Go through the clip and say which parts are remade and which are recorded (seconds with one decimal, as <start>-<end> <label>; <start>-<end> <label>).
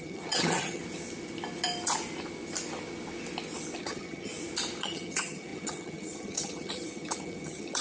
0.0-0.8 remade; 0.8-3.8 recorded; 3.8-4.3 remade; 4.3-4.8 recorded; 4.8-7.8 remade